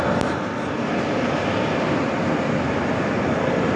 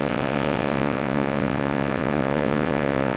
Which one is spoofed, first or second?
second